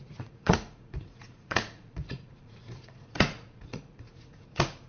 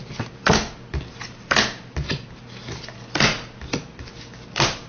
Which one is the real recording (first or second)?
second